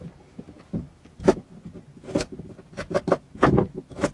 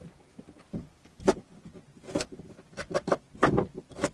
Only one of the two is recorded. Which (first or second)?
first